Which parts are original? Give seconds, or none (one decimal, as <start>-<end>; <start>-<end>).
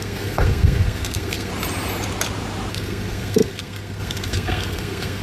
1.5-2.7